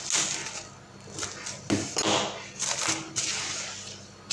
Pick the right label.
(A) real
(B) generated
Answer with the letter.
A